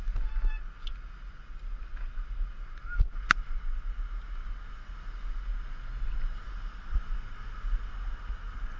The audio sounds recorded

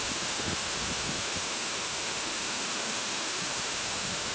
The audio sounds remade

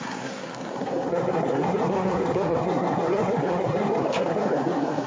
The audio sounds remade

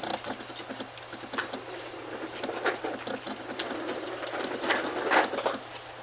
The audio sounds recorded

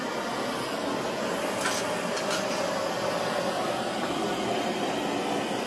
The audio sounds recorded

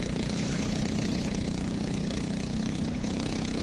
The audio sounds remade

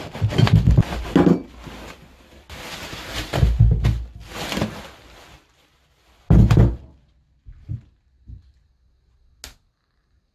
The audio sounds recorded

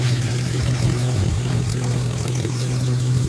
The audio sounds remade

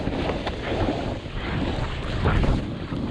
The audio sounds recorded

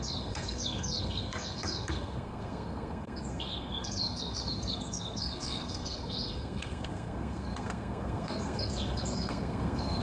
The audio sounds remade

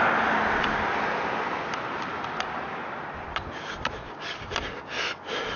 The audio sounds recorded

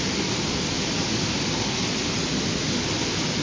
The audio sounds recorded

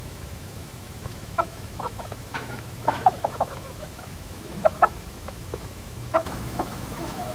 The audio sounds remade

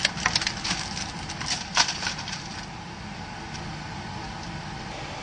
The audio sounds recorded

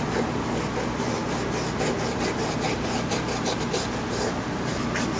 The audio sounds recorded